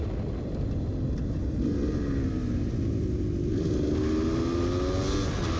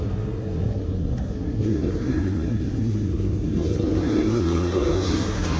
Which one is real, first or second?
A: first